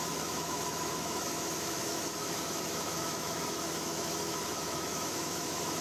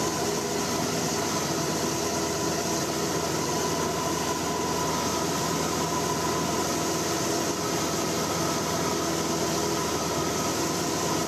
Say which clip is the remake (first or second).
first